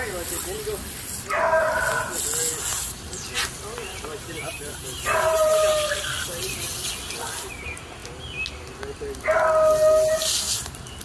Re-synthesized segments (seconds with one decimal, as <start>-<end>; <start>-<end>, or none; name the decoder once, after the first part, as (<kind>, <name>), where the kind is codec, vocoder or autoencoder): 2.7-3.3 (vocoder, BigVGAN v2); 3.8-5.9